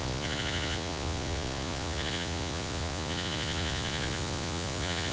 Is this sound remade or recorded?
remade